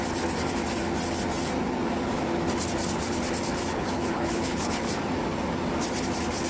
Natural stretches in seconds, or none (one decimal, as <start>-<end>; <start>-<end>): 0.0-3.7; 4.9-6.5